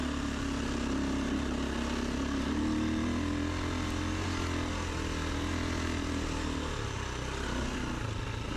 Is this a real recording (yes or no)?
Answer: yes